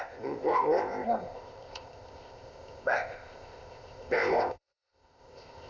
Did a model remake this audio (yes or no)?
yes